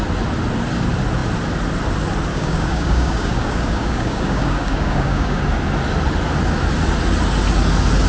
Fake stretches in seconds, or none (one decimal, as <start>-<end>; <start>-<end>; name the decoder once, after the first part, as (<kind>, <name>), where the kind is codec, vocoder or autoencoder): 2.3-5.4 (codec, DAC)